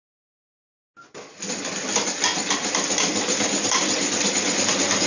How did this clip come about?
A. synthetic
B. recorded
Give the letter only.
B